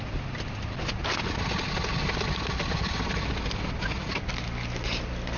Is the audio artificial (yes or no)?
no